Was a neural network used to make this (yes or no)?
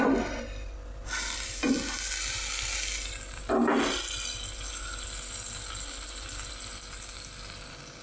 no